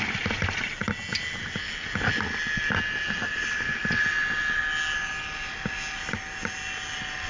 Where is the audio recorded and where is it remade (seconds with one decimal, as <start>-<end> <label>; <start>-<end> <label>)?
0.0-7.3 recorded